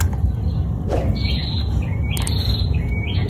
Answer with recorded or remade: recorded